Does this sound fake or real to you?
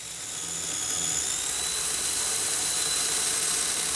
real